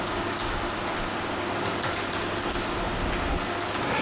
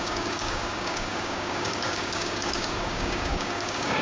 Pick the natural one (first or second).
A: first